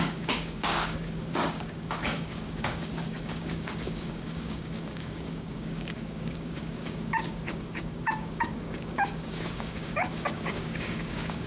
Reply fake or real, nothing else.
fake